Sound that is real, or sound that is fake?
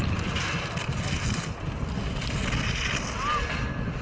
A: real